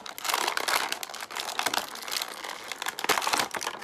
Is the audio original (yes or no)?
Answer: yes